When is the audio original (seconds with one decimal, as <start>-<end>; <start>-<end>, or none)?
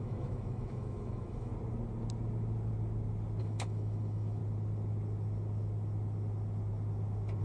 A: 1.5-3.4; 4.4-7.4